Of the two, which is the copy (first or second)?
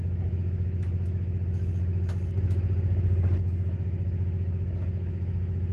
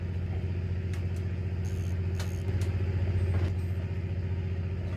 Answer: first